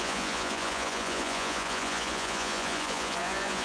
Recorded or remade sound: remade